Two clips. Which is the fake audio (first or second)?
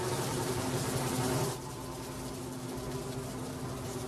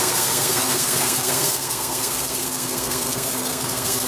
second